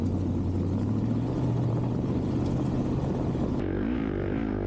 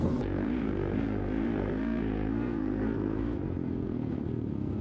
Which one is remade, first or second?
second